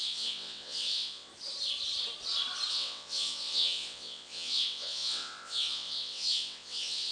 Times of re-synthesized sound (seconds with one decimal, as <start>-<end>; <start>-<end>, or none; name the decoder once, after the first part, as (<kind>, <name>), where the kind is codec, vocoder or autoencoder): 0.0-1.3 (vocoder, WaveNeXt); 2.7-7.1